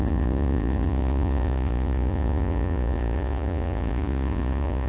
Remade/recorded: remade